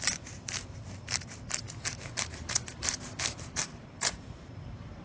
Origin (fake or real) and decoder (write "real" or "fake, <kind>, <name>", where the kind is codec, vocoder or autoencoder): fake, vocoder, BigVGAN v2